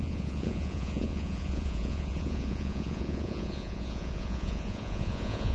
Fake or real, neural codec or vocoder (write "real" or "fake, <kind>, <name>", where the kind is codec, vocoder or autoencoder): fake, vocoder, Vocos